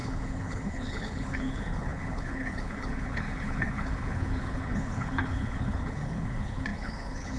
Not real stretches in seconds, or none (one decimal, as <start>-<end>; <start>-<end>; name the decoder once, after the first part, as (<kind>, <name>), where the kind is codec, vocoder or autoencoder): 0.0-7.4 (codec, HILCodec)